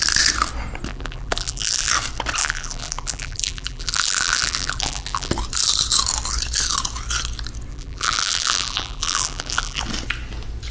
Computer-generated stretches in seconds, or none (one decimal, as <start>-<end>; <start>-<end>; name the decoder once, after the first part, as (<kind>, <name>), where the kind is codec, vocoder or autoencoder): 0.9-1.9 (vocoder, BigVGAN v2); 2.4-5.3; 7.7-9.8